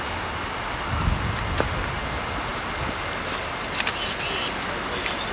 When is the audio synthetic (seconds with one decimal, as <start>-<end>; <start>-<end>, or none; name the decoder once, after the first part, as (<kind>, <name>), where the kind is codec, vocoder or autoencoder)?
none